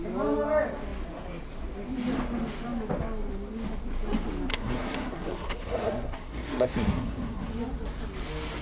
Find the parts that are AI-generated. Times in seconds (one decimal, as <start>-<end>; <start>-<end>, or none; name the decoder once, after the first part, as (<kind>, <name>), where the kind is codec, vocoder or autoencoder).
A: 4.5-7.5 (codec, SNAC)